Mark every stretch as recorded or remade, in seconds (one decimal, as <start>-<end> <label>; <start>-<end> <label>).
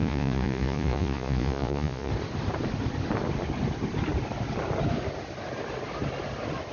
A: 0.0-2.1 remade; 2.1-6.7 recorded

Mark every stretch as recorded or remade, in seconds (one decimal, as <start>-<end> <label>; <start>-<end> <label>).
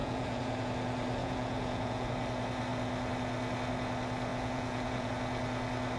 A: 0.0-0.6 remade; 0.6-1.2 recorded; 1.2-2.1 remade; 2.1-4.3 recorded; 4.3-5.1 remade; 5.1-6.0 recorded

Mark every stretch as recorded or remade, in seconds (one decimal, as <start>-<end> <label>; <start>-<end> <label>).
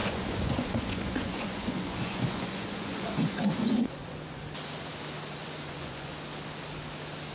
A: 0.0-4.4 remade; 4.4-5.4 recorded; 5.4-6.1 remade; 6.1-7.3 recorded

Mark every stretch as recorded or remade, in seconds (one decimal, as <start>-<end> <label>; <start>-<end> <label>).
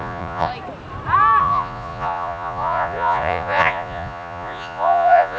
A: 0.0-0.5 remade; 0.5-1.4 recorded; 1.4-5.4 remade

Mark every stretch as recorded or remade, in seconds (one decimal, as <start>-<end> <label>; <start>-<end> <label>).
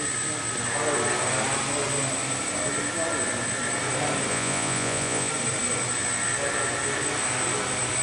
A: 0.0-4.3 recorded; 4.3-5.3 remade; 5.3-8.0 recorded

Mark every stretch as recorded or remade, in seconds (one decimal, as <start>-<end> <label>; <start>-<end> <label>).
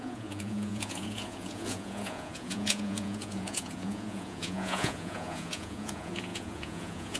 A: 0.0-7.2 remade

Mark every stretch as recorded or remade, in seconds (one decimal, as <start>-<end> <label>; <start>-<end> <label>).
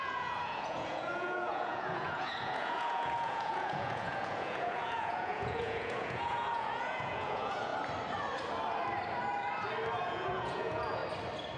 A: 0.0-7.7 remade; 7.7-10.0 recorded; 10.0-11.0 remade; 11.0-11.6 recorded